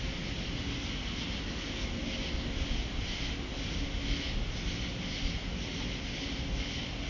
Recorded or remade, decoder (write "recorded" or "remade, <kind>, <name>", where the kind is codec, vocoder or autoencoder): recorded